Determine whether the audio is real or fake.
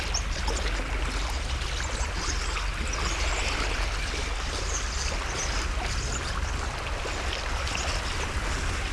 real